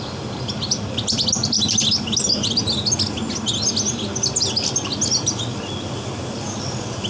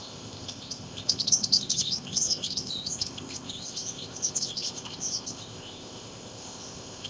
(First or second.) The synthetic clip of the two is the second